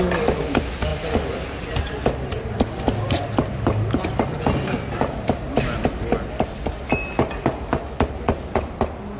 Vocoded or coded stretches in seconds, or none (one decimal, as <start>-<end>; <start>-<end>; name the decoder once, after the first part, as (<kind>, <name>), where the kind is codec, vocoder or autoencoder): none